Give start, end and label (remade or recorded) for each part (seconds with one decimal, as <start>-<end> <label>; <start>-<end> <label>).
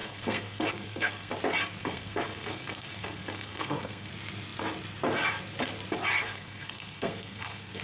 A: 0.0-1.3 remade; 1.3-1.8 recorded; 1.8-4.1 remade; 4.1-6.2 recorded; 6.2-7.8 remade